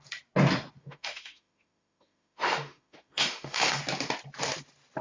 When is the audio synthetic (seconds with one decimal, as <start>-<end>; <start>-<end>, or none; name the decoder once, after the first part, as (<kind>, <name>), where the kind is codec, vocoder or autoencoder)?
0.8-3.8 (autoencoder, DAC-VAE)